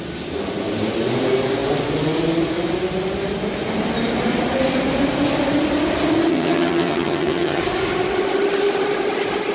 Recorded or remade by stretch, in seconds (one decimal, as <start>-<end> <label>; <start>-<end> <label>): 0.0-6.3 recorded; 6.3-7.6 remade; 7.6-9.5 recorded